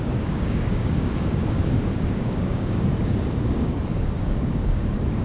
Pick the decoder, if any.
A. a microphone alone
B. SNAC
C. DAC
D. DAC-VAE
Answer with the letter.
C